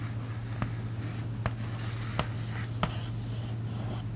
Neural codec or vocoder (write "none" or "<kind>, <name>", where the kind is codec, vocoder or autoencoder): none